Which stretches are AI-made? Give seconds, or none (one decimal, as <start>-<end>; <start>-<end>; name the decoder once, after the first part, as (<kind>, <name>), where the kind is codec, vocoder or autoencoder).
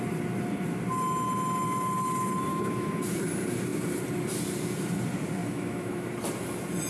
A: 2.5-3.0 (autoencoder, DAC-VAE); 5.4-6.1